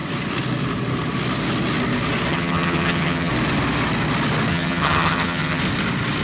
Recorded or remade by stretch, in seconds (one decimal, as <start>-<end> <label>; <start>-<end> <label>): 0.0-2.3 recorded; 2.3-3.3 remade; 3.3-4.5 recorded; 4.5-5.6 remade; 5.6-6.2 recorded